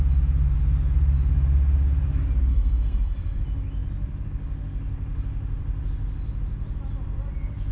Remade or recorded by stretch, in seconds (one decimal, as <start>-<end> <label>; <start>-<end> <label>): 0.0-2.5 recorded; 2.5-3.4 remade; 3.4-7.7 recorded